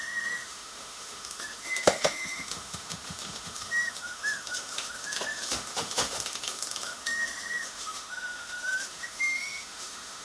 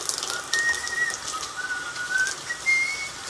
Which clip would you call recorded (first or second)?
second